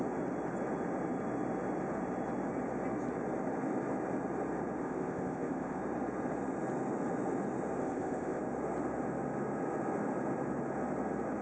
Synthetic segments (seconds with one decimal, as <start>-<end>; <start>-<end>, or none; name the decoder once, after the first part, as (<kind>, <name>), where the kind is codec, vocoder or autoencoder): 4.8-5.8 (codec, ZipCodec); 7.8-8.4